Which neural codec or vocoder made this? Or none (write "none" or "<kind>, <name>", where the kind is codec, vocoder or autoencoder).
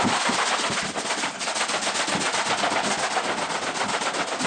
none